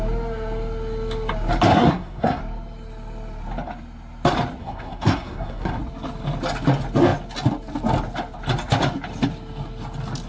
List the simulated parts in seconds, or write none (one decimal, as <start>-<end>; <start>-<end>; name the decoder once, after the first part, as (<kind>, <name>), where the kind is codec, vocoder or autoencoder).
1.7-2.4 (codec, SNAC); 4.6-5.8